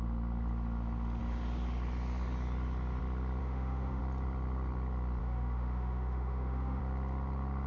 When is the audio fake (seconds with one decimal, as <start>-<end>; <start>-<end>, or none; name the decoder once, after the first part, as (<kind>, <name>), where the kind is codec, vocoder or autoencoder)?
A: 3.4-4.0 (autoencoder, DAC-VAE); 5.2-6.8